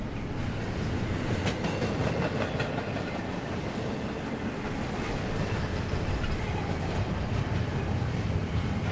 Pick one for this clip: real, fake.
real